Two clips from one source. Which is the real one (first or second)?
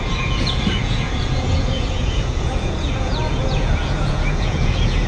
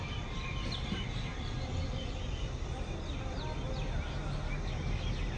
second